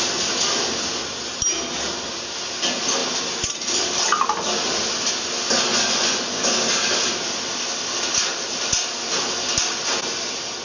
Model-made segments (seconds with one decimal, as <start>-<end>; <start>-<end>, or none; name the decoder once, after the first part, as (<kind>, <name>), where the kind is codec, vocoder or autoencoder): 5.7-6.5 (vocoder, Vocos)